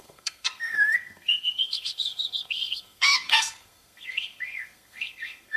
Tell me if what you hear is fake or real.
fake